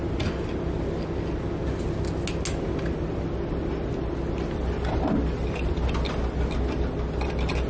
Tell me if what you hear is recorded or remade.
recorded